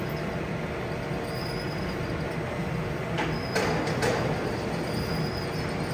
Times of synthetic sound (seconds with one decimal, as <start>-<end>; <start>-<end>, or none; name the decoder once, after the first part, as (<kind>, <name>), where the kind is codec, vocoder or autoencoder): 2.6-4.9 (vocoder, BigVGAN v2)